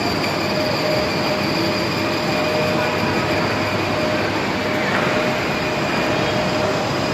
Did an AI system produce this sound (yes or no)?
no